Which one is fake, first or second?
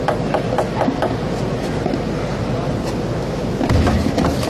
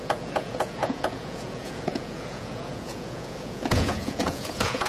second